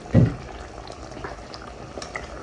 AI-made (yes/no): no